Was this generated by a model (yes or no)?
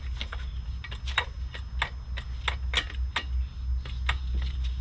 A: no